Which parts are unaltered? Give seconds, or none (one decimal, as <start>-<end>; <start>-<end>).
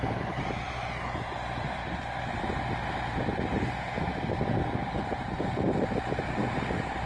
none